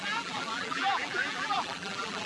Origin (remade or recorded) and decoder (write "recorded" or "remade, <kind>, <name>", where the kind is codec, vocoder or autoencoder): remade, vocoder, BigVGAN v2